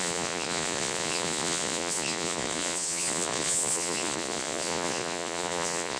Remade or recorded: remade